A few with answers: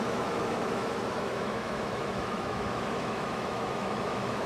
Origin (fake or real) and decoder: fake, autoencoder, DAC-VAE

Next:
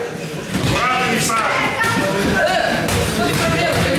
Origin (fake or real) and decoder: real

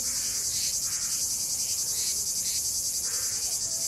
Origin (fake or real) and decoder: real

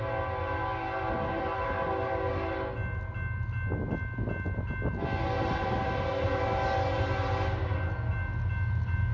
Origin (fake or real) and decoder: real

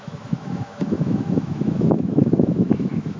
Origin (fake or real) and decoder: fake, autoencoder, DAC-VAE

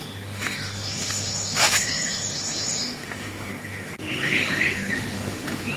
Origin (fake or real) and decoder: fake, autoencoder, DAC-VAE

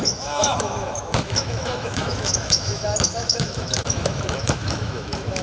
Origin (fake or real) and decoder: fake, autoencoder, DAC-VAE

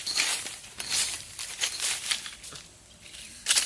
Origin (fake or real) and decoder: real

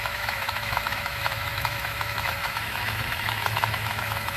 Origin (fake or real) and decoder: fake, autoencoder, DAC-VAE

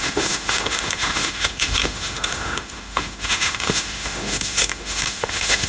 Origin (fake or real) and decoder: fake, autoencoder, DAC-VAE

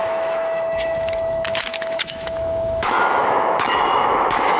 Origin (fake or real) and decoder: fake, autoencoder, DAC-VAE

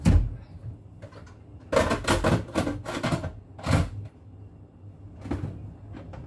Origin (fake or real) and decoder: real